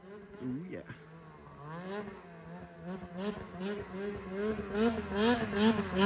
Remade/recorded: recorded